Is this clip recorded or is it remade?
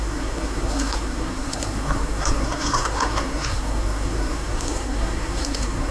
remade